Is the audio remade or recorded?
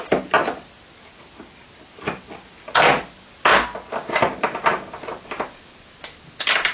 recorded